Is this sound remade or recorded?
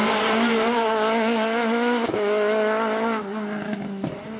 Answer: recorded